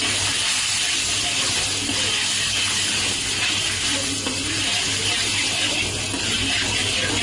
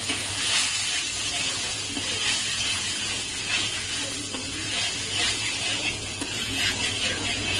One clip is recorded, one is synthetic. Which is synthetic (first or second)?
second